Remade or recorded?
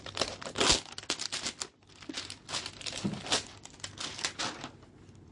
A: recorded